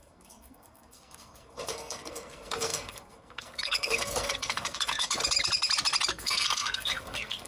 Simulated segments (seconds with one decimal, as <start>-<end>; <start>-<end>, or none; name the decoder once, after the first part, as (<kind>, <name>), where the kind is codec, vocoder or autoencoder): 0.0-5.2 (codec, SNAC); 6.1-7.5